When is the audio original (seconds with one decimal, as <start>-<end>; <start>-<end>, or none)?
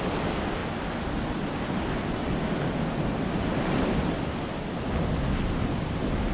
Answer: 0.0-6.3